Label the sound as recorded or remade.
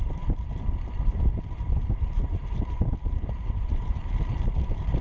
remade